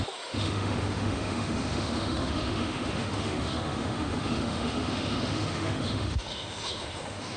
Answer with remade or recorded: remade